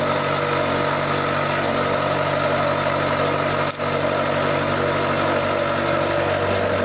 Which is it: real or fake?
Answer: real